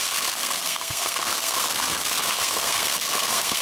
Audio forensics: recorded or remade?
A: remade